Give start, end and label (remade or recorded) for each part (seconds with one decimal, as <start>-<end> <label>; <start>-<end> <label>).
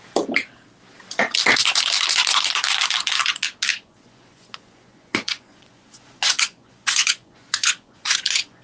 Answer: 0.0-3.7 recorded; 3.7-8.6 remade